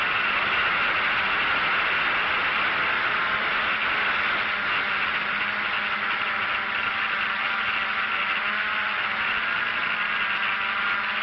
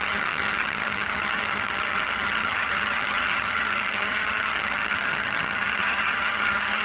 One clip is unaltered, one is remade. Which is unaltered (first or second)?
first